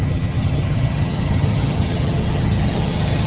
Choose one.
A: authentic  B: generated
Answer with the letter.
B